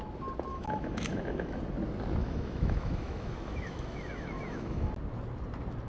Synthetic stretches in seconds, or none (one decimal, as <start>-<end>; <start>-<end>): 0.5-1.6; 2.2-4.9